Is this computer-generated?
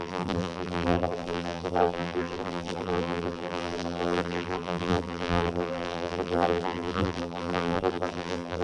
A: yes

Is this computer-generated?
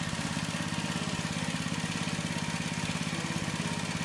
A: no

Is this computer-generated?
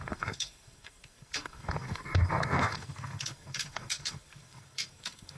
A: yes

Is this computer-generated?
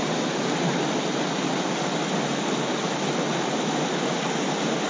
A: no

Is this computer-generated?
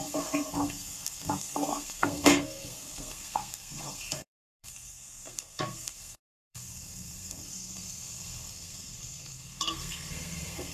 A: yes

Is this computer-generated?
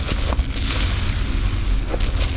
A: no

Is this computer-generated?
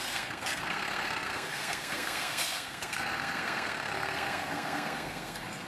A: yes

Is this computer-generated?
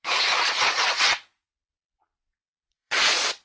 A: yes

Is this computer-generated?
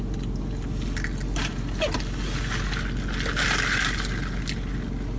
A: no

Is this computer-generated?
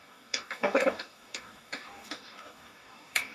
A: yes